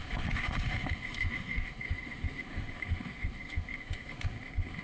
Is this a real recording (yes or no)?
no